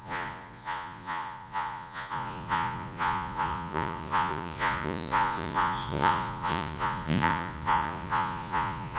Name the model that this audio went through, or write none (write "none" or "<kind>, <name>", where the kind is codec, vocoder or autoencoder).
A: vocoder, Vocos